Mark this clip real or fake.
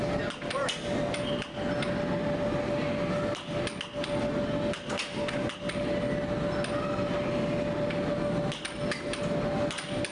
real